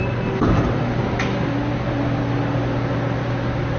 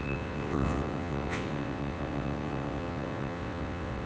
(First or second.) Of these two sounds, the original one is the first